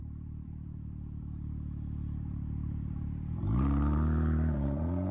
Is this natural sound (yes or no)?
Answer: no